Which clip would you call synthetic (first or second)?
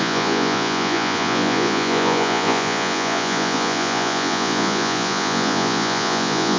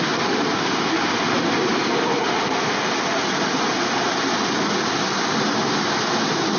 first